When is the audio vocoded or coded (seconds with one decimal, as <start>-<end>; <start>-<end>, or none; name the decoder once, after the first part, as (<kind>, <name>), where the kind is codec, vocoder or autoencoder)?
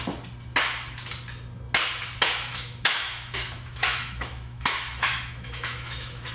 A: 2.5-6.3 (autoencoder, DAC-VAE)